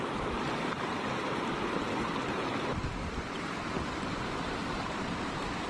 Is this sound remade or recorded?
recorded